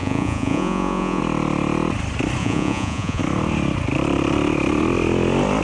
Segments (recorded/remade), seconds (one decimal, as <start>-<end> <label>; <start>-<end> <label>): 0.0-1.2 remade; 1.2-2.4 recorded; 2.4-3.2 remade; 3.2-5.6 recorded